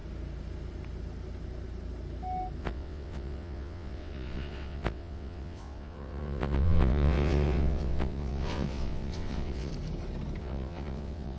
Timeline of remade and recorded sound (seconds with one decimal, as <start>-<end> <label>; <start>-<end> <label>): 0.0-2.6 recorded; 2.6-9.7 remade; 9.7-10.4 recorded; 10.4-11.4 remade

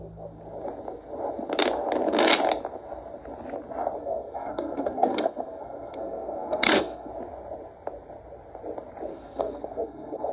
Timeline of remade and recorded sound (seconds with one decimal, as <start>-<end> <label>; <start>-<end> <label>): 0.0-4.0 recorded; 4.0-7.1 remade; 7.1-9.1 recorded; 9.1-10.3 remade

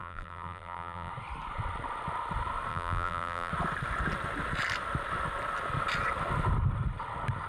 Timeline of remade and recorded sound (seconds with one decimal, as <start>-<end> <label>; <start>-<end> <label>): 0.0-1.1 remade; 1.1-2.7 recorded; 2.7-3.5 remade; 3.5-7.5 recorded

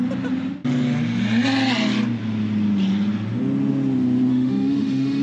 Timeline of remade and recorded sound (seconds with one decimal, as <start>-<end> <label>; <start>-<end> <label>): 0.0-4.3 recorded; 4.3-5.2 remade

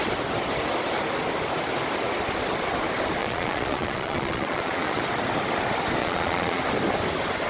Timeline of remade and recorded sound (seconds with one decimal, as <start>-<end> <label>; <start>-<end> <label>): 0.0-3.2 recorded; 3.2-5.0 remade; 5.0-6.0 recorded; 6.0-6.6 remade; 6.6-7.5 recorded

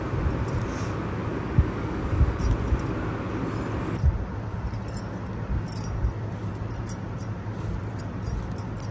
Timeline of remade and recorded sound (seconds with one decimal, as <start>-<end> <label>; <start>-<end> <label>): 0.0-1.3 recorded; 1.3-2.4 remade; 2.4-8.9 recorded